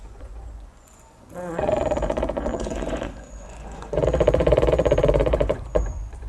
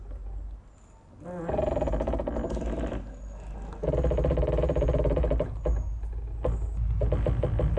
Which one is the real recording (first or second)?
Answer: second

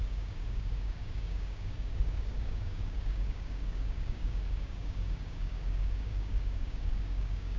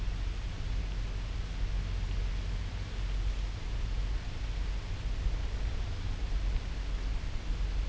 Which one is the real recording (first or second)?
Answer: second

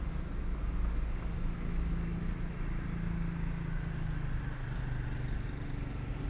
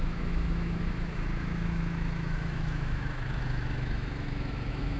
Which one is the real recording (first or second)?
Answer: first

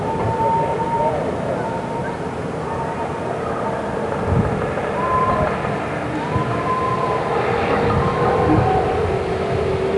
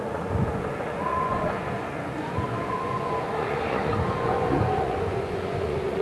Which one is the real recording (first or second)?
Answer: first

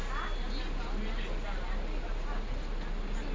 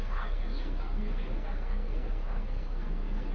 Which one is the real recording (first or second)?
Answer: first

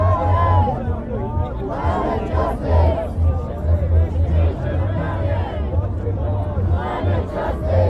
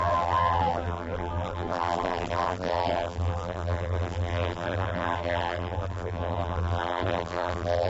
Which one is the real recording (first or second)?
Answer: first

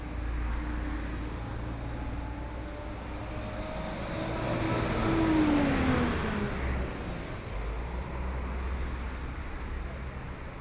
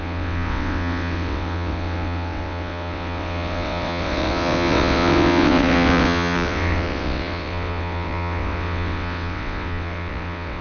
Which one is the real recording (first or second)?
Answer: first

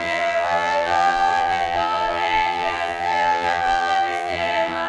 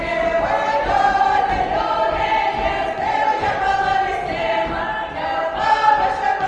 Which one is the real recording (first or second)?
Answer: second